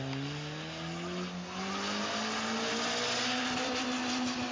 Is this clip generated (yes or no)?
no